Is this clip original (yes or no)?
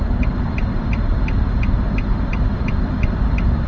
no